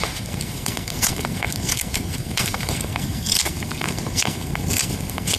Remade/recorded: remade